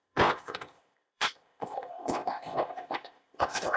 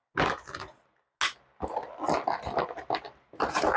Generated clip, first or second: first